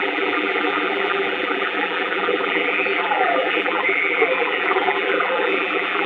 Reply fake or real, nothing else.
fake